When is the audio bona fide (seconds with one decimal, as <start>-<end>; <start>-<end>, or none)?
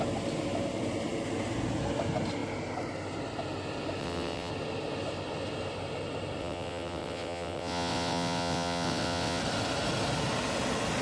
0.0-4.0; 4.5-6.4; 9.4-11.0